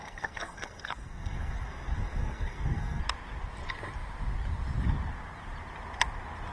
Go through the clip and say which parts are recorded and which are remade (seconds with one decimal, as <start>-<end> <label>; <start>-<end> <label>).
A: 0.0-3.0 remade; 3.0-6.5 recorded